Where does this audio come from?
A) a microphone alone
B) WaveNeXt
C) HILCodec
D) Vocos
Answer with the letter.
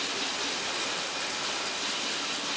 A